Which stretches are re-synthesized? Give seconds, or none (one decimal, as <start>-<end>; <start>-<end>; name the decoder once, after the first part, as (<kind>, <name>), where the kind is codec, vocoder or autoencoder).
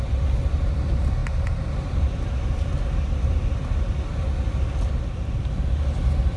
none